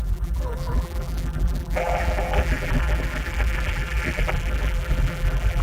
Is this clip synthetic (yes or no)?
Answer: yes